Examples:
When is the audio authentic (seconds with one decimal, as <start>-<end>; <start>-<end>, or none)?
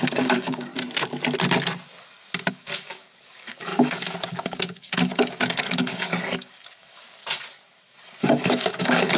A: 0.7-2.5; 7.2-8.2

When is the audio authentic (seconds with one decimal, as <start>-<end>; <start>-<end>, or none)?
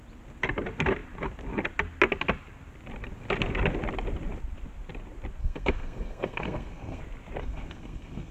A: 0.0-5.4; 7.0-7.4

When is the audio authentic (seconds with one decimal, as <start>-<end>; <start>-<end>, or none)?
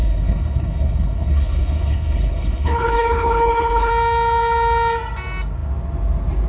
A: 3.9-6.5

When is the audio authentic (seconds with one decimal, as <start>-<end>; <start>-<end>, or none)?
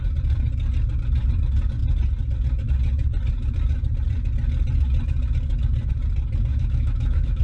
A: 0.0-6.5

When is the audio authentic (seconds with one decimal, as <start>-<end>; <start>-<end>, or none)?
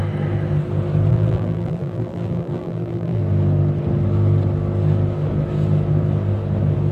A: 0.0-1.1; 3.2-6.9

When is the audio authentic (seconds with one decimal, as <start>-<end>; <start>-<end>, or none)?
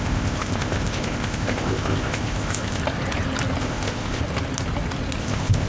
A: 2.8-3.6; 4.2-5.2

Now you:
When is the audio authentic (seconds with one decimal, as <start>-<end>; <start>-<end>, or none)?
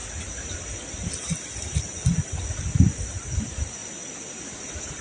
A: 0.0-5.0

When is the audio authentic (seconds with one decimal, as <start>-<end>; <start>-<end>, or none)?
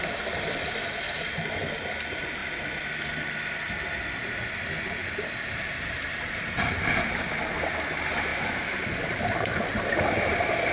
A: 0.0-5.0; 6.7-8.3; 9.5-10.7